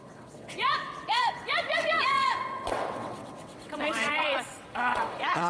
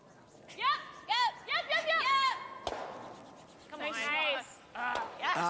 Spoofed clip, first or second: first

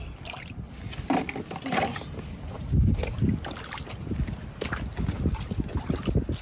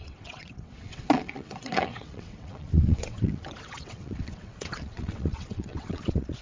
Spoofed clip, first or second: second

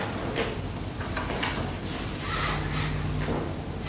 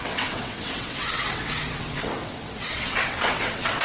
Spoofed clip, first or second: second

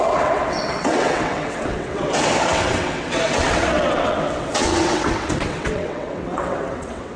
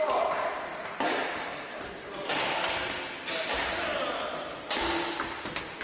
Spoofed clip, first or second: first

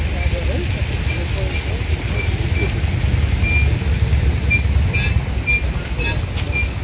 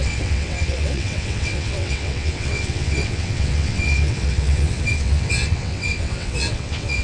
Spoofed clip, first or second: second